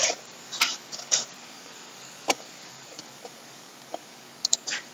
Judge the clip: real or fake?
fake